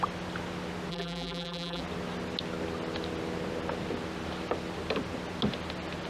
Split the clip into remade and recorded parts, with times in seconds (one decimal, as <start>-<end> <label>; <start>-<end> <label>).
0.0-0.9 recorded; 0.9-1.8 remade; 1.8-6.1 recorded